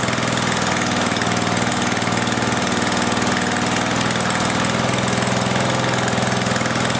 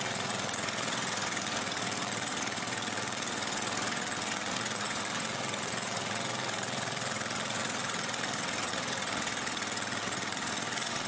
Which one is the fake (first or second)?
second